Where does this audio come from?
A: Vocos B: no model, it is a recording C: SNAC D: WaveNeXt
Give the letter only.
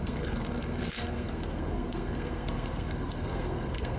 C